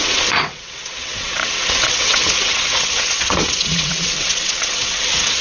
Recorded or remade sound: remade